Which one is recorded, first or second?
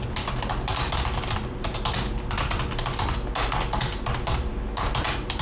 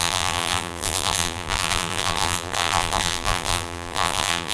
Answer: first